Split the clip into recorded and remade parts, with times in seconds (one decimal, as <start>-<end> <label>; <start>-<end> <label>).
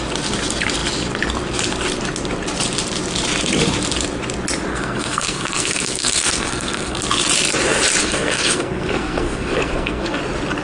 0.0-4.7 recorded; 4.7-7.0 remade; 7.0-8.0 recorded; 8.0-10.2 remade; 10.2-10.6 recorded